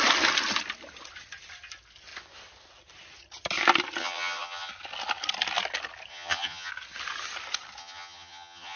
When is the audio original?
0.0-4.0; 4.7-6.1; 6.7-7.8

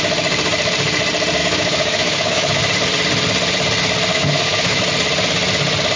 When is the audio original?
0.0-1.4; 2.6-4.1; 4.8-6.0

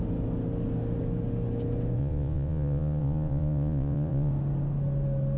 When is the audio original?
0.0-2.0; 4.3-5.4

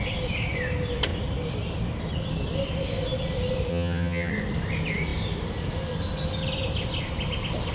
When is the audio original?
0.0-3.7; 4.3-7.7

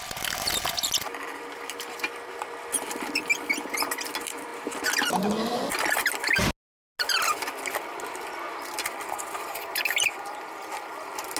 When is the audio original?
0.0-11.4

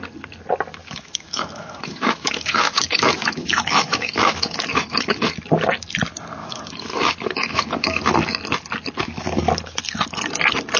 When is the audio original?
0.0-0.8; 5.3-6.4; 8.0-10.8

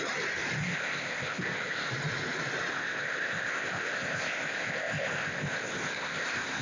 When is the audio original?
0.0-0.6; 1.9-2.7